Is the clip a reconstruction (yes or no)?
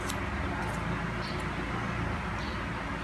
no